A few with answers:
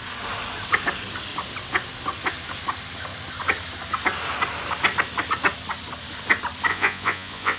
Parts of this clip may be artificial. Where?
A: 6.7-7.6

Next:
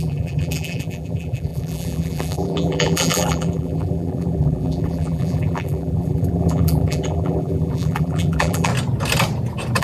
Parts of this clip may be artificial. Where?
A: 0.0-8.7

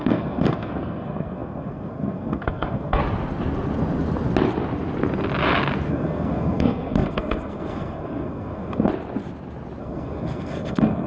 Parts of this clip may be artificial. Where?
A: 0.0-3.0; 5.9-8.9; 9.8-11.1

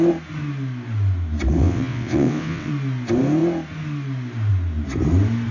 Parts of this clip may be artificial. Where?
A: 1.6-2.7

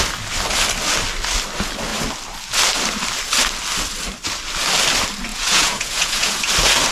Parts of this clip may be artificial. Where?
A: 5.3-6.4

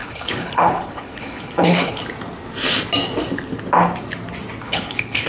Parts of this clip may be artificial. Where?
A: 0.0-2.0; 4.6-5.3

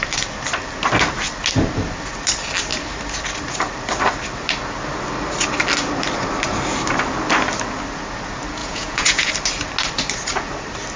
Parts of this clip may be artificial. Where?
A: 8.6-9.3